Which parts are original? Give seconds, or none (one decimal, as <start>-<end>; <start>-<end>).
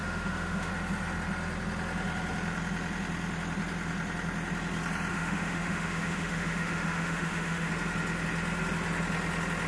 0.7-5.1; 7.7-9.7